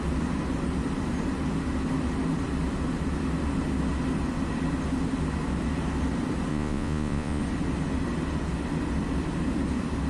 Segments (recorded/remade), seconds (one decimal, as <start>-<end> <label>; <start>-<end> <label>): 0.0-6.5 recorded; 6.5-7.4 remade; 7.4-10.1 recorded